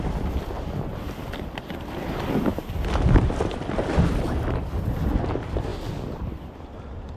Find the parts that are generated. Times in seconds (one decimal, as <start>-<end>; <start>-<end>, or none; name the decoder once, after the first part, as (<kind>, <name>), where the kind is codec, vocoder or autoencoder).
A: none